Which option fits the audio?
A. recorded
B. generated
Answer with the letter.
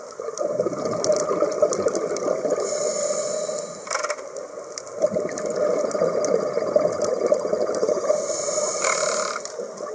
A